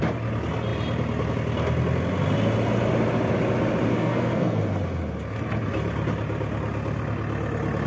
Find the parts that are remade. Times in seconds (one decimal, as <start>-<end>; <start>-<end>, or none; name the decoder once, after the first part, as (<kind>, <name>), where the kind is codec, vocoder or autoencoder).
3.9-4.6 (codec, SNAC)